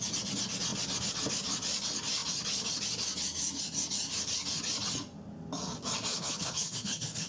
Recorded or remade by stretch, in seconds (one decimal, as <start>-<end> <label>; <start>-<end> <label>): 0.0-6.1 recorded; 6.1-7.3 remade